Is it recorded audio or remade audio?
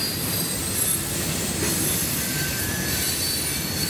remade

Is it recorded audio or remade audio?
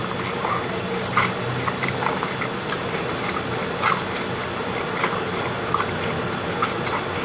recorded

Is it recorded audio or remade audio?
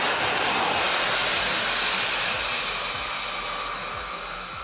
recorded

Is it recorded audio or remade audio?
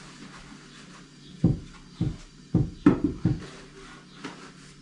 recorded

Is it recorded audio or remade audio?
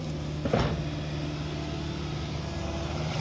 recorded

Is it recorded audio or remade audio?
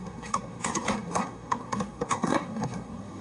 remade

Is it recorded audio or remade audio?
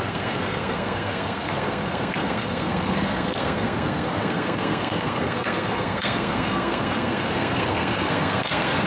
remade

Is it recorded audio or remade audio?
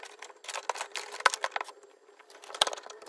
recorded